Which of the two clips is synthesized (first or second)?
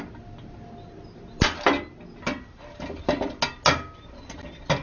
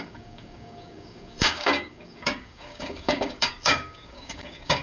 second